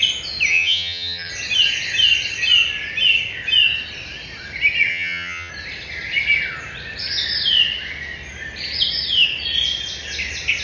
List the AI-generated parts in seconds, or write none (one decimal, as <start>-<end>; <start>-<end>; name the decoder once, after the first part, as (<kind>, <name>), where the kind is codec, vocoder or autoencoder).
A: 0.5-1.3 (vocoder, HiFi-GAN); 4.9-5.5